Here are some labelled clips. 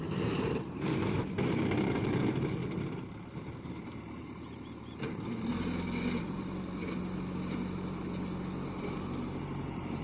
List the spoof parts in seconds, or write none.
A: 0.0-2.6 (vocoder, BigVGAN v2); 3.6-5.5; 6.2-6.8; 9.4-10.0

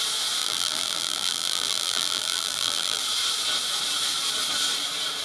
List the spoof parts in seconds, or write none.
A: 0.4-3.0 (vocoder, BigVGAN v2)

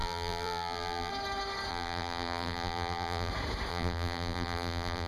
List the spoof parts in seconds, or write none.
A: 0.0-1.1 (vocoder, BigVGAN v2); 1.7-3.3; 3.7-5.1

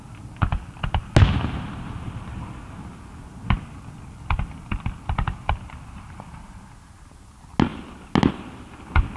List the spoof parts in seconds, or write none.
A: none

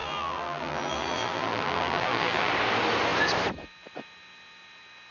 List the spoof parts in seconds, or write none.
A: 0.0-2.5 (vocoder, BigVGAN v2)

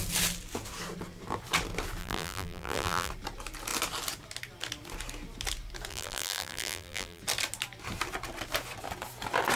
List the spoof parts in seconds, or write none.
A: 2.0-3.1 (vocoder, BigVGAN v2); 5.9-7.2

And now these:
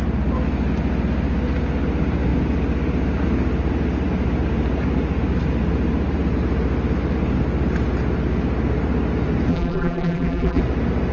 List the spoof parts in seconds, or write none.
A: 9.5-10.6 (vocoder, BigVGAN v2)

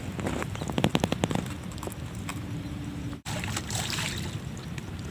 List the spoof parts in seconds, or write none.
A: 2.3-4.1 (vocoder, BigVGAN v2)